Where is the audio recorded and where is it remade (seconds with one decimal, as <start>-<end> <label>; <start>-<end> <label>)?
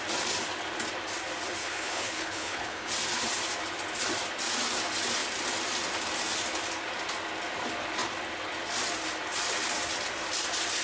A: 0.0-1.6 recorded; 1.6-2.9 remade; 2.9-10.8 recorded